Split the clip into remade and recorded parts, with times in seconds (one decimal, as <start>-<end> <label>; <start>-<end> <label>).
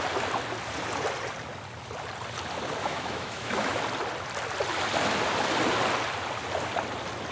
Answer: 0.0-2.8 recorded; 2.8-3.8 remade; 3.8-7.3 recorded